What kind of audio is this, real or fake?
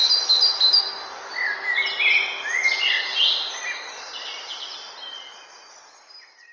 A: real